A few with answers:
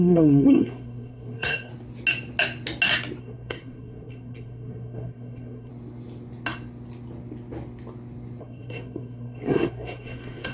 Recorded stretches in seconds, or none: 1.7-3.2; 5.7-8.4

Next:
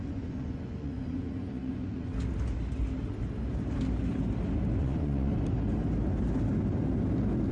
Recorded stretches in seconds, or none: 2.1-4.8; 5.3-7.5

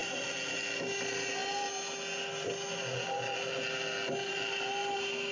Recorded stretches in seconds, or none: 0.0-5.3

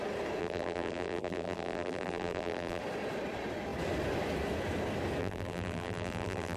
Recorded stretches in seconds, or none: 0.0-0.4; 2.8-5.2

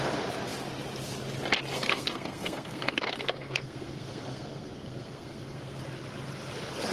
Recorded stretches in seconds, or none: 0.0-1.7; 5.8-6.9